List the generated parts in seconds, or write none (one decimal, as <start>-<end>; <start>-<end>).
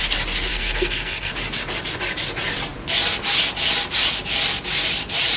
0.5-1.3